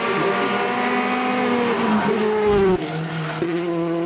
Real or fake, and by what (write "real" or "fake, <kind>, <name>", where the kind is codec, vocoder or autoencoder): real